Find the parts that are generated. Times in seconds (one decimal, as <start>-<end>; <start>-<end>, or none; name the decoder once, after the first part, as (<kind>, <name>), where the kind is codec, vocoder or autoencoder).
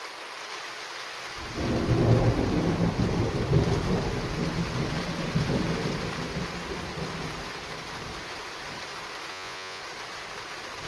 9.3-9.8 (vocoder, Vocos)